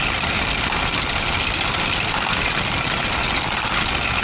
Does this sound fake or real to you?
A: fake